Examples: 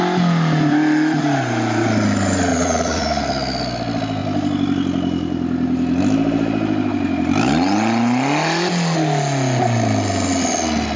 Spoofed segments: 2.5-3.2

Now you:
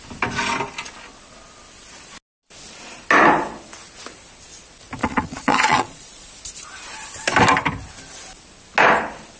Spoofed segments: 5.0-6.3

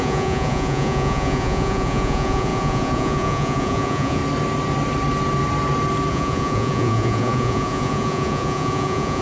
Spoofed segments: 0.0-4.2; 6.1-9.2

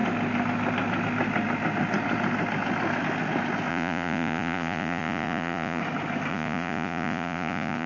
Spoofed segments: 3.7-5.8; 6.3-7.9

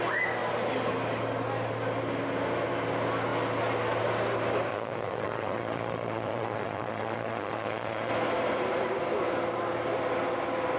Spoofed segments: 4.7-8.1

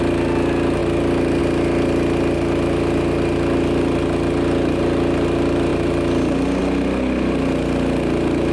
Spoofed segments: none